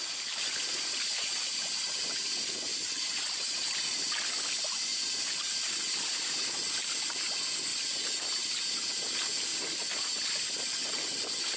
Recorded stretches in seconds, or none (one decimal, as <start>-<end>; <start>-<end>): 0.0-11.6